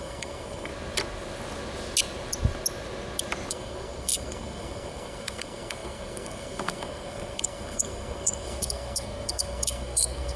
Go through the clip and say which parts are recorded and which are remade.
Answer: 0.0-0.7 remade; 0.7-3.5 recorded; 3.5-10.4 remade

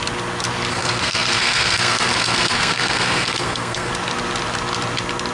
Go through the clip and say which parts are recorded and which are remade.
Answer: 0.0-0.7 recorded; 0.7-3.9 remade; 3.9-5.3 recorded

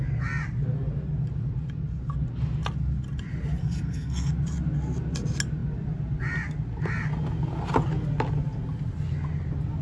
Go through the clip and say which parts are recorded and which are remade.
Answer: 0.0-3.6 recorded; 3.6-4.3 remade; 4.3-9.8 recorded

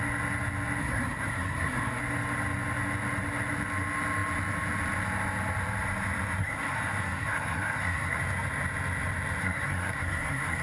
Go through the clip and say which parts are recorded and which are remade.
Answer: 0.0-0.8 recorded; 0.8-2.0 remade; 2.0-6.4 recorded; 6.4-8.2 remade; 8.2-9.4 recorded; 9.4-10.6 remade

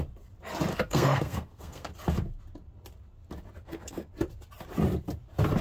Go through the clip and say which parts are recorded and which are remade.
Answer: 0.0-0.7 recorded; 0.7-1.9 remade; 1.9-3.6 recorded; 3.6-4.1 remade; 4.1-5.6 recorded

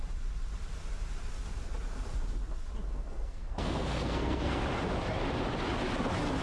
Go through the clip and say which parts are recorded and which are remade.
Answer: 0.0-2.9 recorded; 2.9-4.6 remade; 4.6-6.4 recorded